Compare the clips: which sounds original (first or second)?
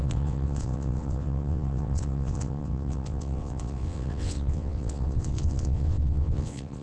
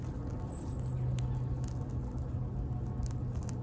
second